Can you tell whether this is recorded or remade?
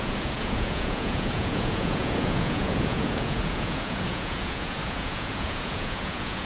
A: remade